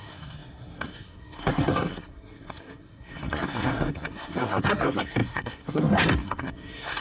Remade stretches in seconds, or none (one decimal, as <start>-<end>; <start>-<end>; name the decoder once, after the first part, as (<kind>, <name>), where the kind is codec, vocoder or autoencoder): 0.0-7.0 (codec, SNAC)